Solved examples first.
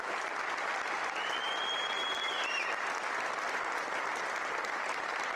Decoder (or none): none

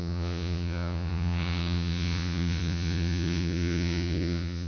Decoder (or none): vocoder, Vocos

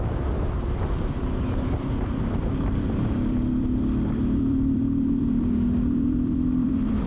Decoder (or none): vocoder, BigVGAN v2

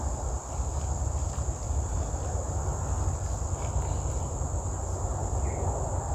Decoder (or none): none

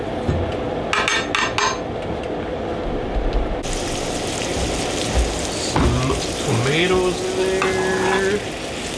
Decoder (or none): none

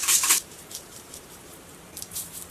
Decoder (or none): vocoder, BigVGAN v2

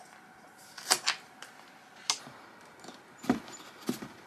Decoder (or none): none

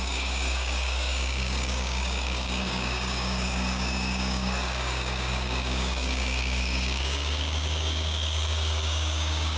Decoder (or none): codec, DAC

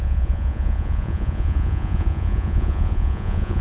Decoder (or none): vocoder, Vocos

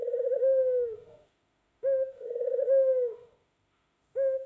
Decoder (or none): autoencoder, DAC-VAE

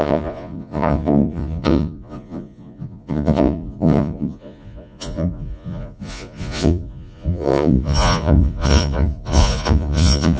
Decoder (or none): vocoder, Vocos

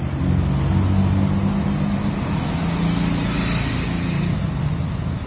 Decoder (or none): none